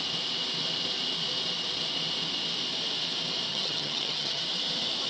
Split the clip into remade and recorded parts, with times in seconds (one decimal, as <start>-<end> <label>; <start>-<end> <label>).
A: 0.0-3.5 recorded; 3.5-4.4 remade; 4.4-5.1 recorded

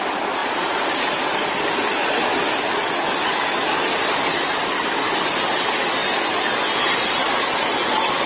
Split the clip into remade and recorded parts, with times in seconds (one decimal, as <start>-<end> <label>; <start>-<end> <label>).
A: 0.0-8.3 recorded